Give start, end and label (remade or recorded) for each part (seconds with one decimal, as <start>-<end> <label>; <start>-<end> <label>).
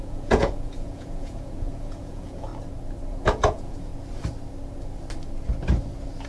0.0-2.5 remade; 2.5-3.1 recorded; 3.1-3.9 remade; 3.9-6.3 recorded